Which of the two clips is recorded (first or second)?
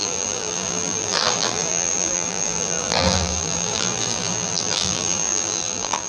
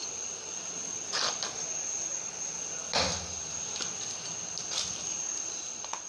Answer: second